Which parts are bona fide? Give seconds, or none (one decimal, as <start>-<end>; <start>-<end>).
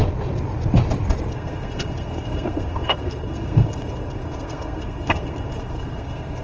0.0-1.3